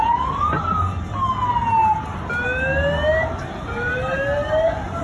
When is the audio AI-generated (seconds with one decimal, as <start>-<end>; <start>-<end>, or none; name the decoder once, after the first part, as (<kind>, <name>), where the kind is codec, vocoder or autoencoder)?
none